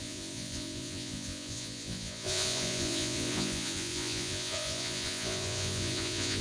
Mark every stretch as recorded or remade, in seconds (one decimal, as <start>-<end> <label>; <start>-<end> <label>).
0.0-6.4 remade